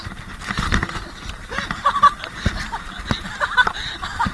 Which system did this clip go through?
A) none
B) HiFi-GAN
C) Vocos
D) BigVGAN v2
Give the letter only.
A